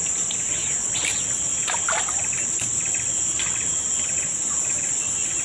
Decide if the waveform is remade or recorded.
recorded